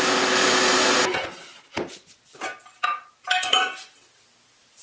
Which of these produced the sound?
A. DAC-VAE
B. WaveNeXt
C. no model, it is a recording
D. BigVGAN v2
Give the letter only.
C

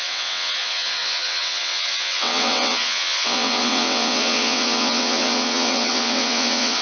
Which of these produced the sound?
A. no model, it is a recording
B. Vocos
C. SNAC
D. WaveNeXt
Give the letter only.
D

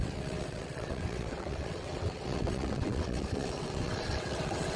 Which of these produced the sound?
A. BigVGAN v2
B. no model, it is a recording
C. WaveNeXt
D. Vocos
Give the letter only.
C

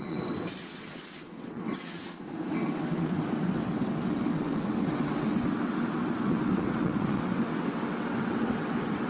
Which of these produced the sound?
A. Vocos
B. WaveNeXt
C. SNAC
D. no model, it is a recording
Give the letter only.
B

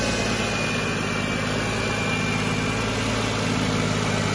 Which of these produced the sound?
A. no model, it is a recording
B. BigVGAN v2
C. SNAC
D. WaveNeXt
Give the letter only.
A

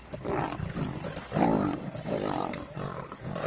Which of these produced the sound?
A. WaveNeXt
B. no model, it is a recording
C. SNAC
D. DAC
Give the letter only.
B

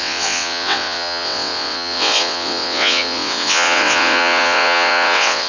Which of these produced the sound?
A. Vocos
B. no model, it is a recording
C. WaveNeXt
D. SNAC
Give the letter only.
C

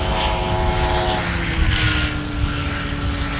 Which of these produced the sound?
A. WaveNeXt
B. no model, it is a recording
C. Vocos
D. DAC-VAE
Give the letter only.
B